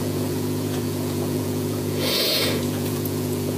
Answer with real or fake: fake